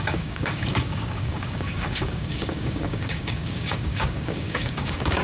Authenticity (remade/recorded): remade